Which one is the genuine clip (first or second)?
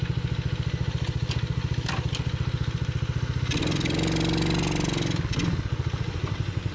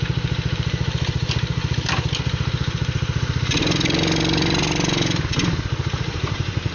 first